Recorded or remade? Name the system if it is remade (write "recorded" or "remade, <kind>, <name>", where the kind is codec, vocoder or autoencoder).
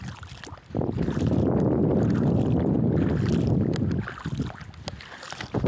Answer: recorded